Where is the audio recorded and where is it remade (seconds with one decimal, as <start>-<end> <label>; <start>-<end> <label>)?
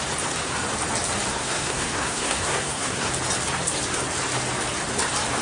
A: 0.0-1.3 recorded; 1.3-3.1 remade; 3.1-5.4 recorded